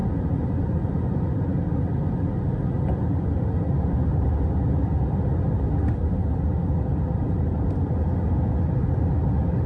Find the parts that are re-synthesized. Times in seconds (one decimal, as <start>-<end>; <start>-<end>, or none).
none